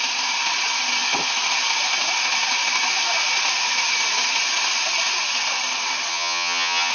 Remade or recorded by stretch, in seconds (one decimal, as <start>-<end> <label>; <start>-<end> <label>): 0.0-6.1 recorded; 6.1-6.9 remade